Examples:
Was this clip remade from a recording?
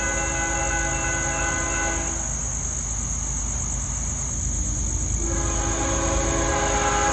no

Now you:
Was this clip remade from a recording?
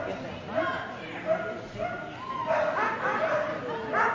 no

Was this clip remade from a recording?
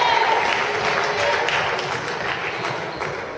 no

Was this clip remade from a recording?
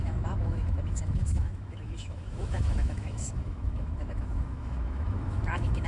yes